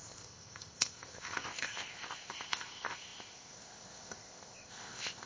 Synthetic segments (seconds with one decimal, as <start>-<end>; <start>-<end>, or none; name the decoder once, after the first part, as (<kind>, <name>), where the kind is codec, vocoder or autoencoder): 0.0-5.3 (codec, ZipCodec)